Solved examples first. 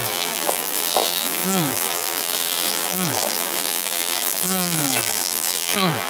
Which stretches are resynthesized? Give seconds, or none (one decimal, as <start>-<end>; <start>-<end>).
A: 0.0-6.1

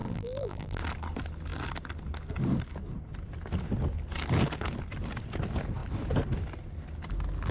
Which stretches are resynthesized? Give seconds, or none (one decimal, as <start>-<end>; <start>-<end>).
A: 0.0-0.8

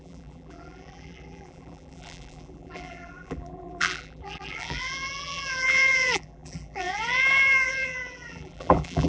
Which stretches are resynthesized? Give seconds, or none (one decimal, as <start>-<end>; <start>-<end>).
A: 0.0-9.1